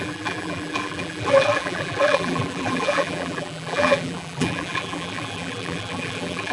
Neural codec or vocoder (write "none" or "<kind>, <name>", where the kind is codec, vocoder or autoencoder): vocoder, BigVGAN v2